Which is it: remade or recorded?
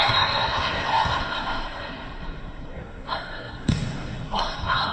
remade